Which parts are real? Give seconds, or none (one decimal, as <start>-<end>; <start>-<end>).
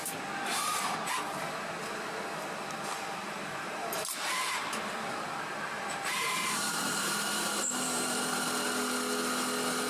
0.0-3.2; 8.2-9.9